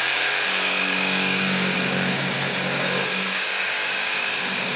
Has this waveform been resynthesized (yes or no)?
yes